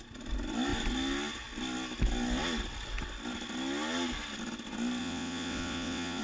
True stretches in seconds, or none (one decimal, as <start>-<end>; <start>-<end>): 0.0-5.0